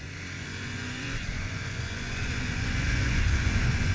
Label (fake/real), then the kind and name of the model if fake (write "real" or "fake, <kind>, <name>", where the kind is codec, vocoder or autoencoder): fake, vocoder, Vocos